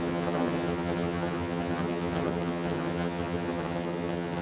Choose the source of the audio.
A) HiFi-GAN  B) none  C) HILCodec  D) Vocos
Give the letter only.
A